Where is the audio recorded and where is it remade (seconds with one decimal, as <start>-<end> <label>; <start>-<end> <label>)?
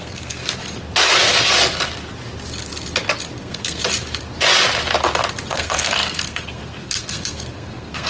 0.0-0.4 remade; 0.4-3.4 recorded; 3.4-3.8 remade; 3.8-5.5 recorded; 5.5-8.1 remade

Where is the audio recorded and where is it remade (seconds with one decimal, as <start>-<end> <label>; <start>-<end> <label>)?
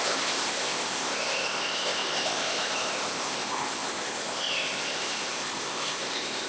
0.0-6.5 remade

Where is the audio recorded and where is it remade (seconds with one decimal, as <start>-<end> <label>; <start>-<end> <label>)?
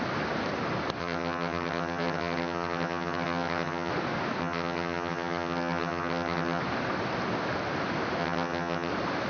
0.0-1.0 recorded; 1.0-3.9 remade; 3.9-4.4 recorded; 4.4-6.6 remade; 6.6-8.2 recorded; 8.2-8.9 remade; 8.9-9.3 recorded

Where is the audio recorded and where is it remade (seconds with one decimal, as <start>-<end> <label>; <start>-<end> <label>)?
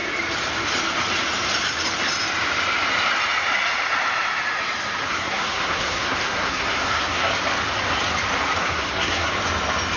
0.0-5.1 recorded; 5.1-7.3 remade; 7.3-8.6 recorded; 8.6-9.3 remade; 9.3-10.0 recorded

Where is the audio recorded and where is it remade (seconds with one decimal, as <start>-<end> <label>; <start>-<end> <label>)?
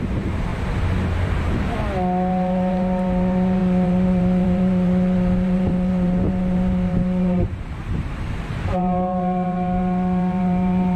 0.0-0.5 remade; 0.5-2.3 recorded; 2.3-11.0 remade